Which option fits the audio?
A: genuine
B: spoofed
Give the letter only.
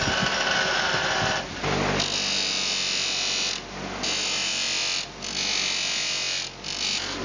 A